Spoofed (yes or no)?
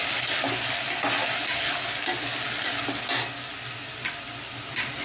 no